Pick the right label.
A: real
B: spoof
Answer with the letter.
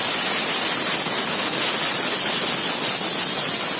A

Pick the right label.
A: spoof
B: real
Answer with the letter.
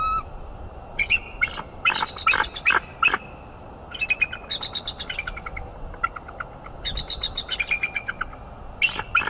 B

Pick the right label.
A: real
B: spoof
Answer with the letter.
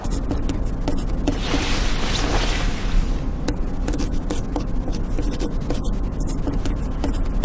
A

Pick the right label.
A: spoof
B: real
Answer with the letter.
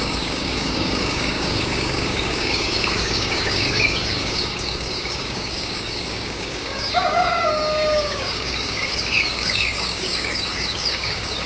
A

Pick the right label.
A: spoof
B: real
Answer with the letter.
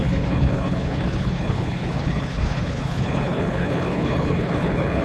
A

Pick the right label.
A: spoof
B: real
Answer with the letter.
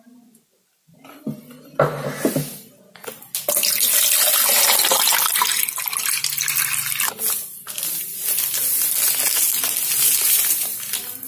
B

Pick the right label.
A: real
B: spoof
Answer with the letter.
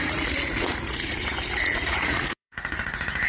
B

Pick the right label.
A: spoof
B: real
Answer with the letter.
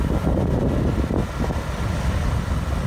B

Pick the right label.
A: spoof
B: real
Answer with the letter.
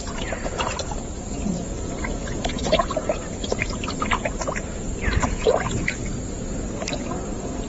A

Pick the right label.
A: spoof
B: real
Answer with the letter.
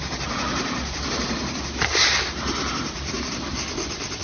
B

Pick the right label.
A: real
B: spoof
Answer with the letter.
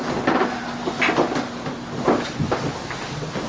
A